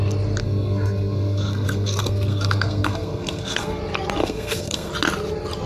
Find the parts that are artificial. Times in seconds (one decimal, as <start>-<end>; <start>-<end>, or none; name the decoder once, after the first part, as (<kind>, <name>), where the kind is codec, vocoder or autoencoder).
0.4-3.8 (codec, SNAC); 4.2-4.9